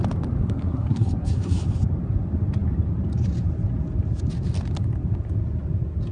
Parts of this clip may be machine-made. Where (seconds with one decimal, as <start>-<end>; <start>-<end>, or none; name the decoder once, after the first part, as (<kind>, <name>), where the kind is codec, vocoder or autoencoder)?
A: 0.4-1.6 (codec, SNAC)